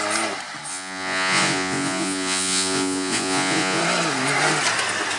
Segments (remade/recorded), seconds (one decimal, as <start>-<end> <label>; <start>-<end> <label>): 0.0-0.7 recorded; 0.7-3.8 remade; 3.8-5.2 recorded